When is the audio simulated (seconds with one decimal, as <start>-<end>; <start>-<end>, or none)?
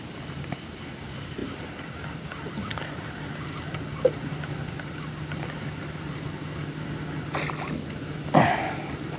none